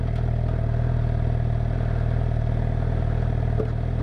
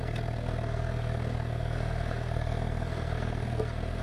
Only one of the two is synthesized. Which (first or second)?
second